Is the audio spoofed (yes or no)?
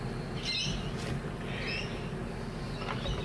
no